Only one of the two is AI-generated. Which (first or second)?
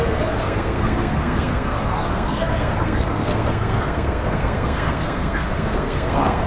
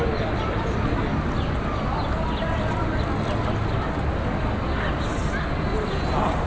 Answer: first